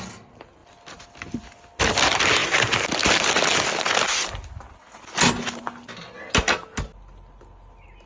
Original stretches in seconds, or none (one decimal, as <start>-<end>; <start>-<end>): 0.0-8.1